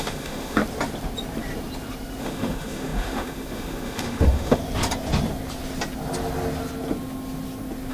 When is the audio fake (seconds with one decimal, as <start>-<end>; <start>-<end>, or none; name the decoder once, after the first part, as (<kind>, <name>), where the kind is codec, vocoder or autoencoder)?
0.0-0.6 (autoencoder, DAC-VAE); 2.2-4.6